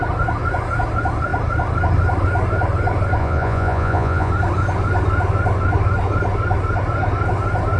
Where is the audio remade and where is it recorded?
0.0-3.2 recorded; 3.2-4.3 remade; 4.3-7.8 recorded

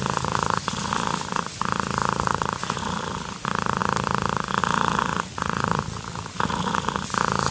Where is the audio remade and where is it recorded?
0.0-5.1 recorded; 5.1-6.7 remade; 6.7-7.5 recorded

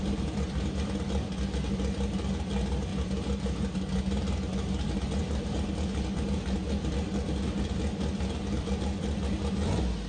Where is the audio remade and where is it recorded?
0.0-10.1 recorded

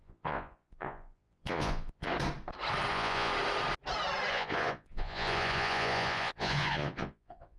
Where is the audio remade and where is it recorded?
0.0-2.1 remade; 2.1-2.9 recorded; 2.9-3.3 remade; 3.3-4.3 recorded; 4.3-7.6 remade

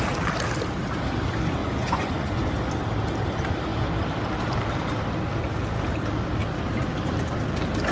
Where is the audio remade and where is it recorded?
0.0-1.6 recorded; 1.6-2.5 remade; 2.5-7.9 recorded

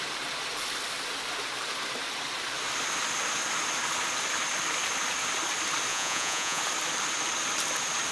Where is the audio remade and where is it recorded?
0.0-5.9 recorded; 5.9-6.6 remade; 6.6-8.1 recorded